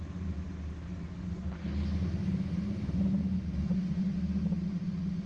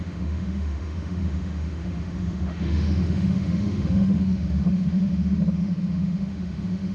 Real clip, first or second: first